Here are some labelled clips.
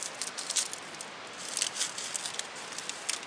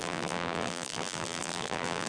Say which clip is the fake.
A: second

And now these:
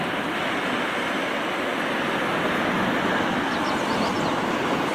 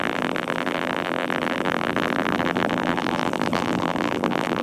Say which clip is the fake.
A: second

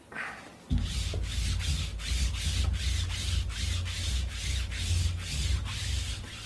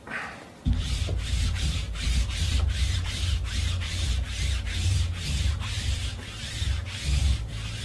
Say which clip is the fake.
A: second